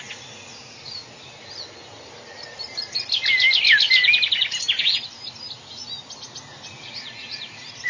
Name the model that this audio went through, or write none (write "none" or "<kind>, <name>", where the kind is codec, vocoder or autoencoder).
none